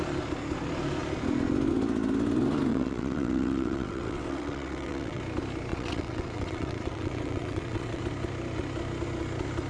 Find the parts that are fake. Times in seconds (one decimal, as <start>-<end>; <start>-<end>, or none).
2.7-5.2; 5.7-8.0